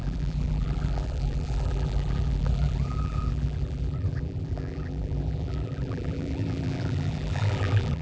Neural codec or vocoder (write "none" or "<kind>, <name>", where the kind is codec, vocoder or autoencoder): vocoder, BigVGAN v2